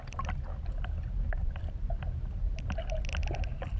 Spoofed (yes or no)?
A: no